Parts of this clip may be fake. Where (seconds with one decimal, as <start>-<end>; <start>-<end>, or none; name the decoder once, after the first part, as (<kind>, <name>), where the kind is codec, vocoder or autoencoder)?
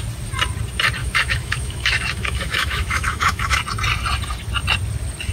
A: 1.0-3.6 (autoencoder, DAC-VAE)